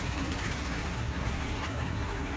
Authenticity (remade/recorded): remade